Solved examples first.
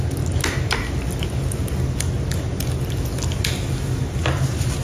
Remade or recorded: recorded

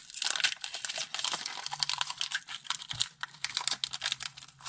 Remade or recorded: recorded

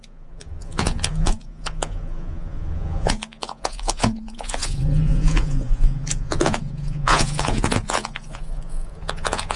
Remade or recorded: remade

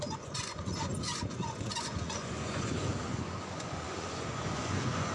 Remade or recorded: remade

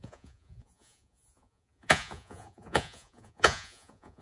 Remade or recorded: remade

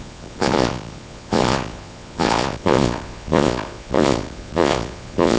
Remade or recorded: remade